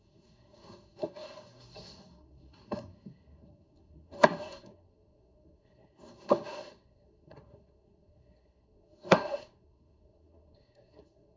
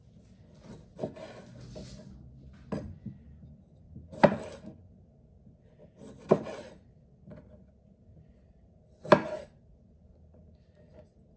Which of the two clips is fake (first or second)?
first